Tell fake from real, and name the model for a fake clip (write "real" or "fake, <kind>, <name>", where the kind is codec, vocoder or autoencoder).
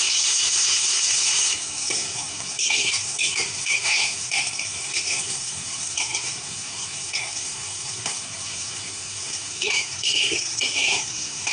fake, codec, SNAC